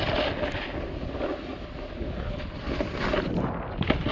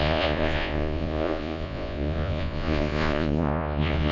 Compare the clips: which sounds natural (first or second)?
first